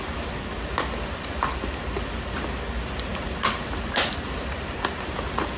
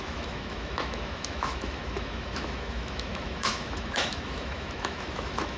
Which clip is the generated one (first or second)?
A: second